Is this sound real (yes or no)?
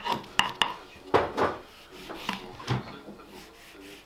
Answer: yes